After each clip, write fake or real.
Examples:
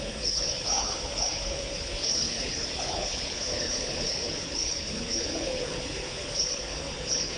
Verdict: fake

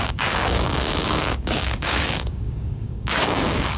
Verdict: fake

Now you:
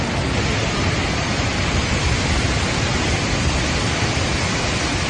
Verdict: real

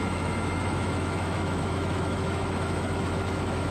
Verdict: fake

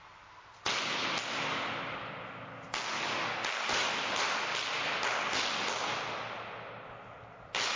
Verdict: real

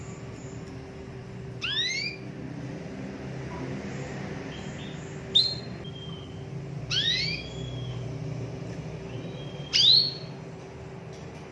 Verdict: real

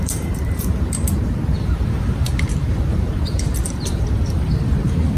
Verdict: fake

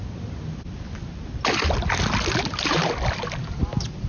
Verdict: real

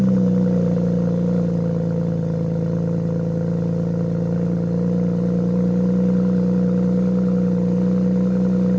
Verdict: real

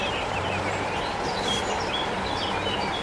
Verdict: fake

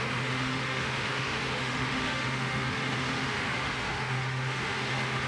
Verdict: fake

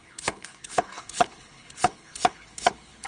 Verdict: fake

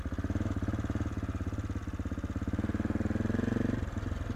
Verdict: real